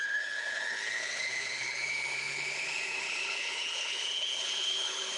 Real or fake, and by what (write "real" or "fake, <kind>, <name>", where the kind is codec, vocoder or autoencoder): fake, codec, HILCodec